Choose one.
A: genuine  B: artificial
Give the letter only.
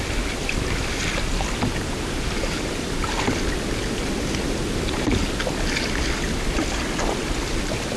A